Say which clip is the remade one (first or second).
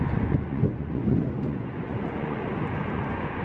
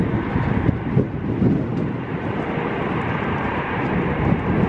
first